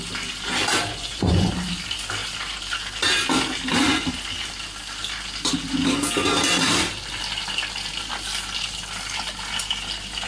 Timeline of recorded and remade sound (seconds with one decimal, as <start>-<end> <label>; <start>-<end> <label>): 0.0-0.9 recorded; 0.9-1.5 remade; 1.5-10.3 recorded